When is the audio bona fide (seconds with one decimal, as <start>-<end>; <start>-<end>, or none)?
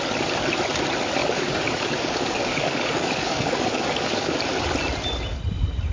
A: 0.0-1.2; 4.4-5.9